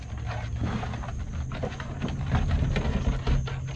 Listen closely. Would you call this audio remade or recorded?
recorded